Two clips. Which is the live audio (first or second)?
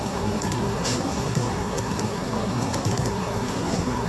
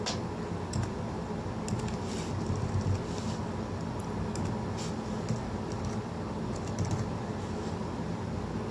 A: second